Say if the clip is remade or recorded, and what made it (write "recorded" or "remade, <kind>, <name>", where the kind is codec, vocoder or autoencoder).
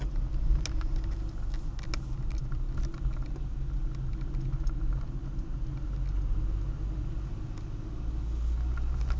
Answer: recorded